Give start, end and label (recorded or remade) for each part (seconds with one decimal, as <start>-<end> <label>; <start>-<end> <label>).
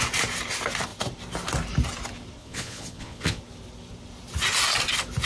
0.0-2.4 recorded; 2.4-3.4 remade; 3.4-5.3 recorded